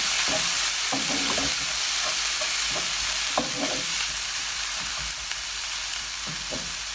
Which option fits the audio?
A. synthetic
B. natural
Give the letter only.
A